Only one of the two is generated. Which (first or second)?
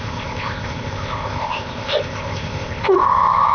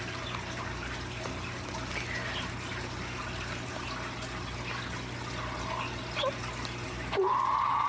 first